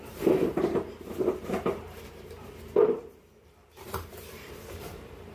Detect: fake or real fake